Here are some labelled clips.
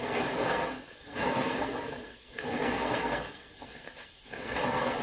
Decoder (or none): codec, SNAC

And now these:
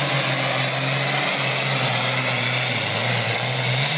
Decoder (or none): none